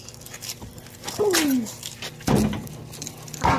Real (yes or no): no